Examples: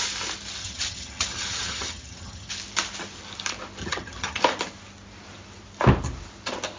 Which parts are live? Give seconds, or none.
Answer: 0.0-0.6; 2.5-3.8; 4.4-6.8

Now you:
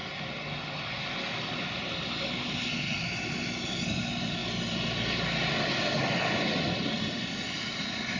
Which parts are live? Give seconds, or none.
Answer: 0.0-8.2

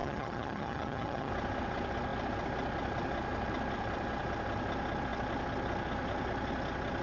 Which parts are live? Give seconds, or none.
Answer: 1.3-7.0

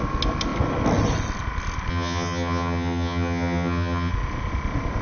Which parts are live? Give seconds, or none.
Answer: 0.0-1.9; 4.1-5.0

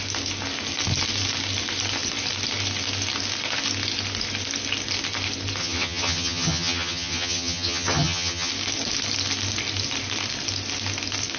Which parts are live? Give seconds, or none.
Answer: 0.0-5.6; 8.5-11.4

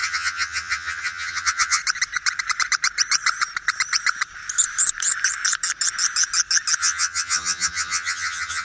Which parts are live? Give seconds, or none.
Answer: 1.8-6.8

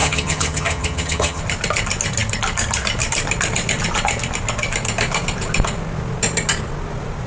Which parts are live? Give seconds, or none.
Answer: 1.4-7.3